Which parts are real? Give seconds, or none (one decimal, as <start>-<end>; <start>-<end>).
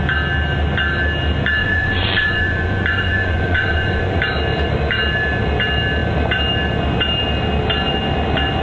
0.0-1.6; 4.2-8.6